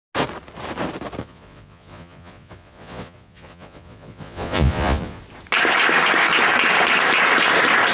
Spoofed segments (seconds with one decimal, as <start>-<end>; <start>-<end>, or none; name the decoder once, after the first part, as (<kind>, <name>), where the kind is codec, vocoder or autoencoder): 1.2-5.2 (vocoder, Vocos)